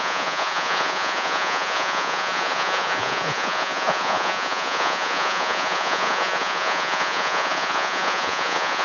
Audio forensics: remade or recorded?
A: remade